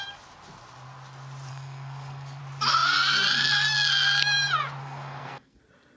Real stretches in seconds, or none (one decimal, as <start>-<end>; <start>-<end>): 0.0-1.5; 2.4-4.8; 5.6-6.0